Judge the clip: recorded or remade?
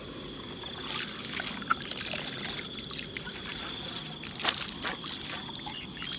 recorded